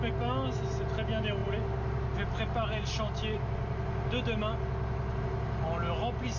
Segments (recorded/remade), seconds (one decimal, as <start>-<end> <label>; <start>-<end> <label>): 0.0-6.4 recorded